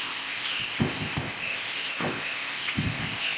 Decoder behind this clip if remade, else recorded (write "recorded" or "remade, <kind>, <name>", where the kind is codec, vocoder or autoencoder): remade, codec, ZipCodec